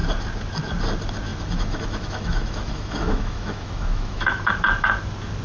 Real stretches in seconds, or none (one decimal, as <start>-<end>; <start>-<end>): 0.0-1.3; 4.5-5.4